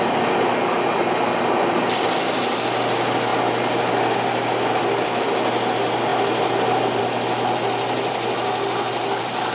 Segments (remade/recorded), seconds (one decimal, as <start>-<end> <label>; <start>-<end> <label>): 0.0-9.5 recorded